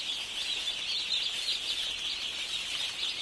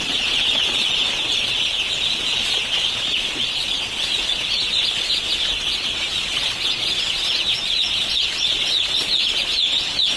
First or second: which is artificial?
second